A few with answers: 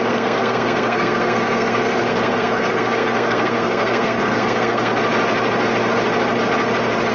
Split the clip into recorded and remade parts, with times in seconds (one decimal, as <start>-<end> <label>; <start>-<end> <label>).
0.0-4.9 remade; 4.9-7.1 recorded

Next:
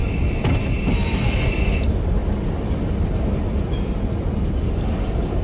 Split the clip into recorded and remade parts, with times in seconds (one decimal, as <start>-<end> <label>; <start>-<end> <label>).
0.0-5.4 recorded

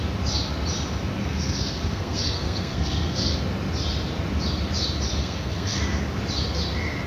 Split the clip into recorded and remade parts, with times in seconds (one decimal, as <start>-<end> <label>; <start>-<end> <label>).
0.0-1.2 recorded; 1.2-3.4 remade; 3.4-5.2 recorded; 5.2-6.0 remade; 6.0-7.1 recorded